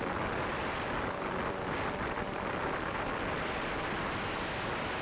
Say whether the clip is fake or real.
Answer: real